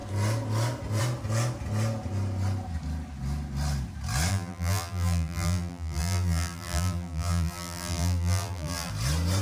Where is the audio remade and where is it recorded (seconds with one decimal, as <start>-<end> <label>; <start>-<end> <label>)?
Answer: 0.0-4.3 recorded; 4.3-8.9 remade; 8.9-9.4 recorded

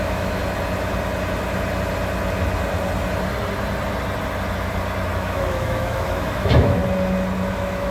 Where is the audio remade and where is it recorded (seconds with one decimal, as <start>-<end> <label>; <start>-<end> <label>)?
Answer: 0.0-0.4 remade; 0.4-5.1 recorded; 5.1-6.8 remade; 6.8-7.5 recorded; 7.5-7.9 remade

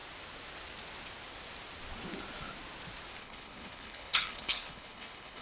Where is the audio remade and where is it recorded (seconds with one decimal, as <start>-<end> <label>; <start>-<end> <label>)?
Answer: 0.0-3.2 recorded; 3.2-5.4 remade

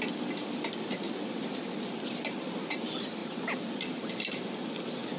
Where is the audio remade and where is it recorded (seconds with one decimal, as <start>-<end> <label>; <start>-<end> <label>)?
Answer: 0.0-5.2 recorded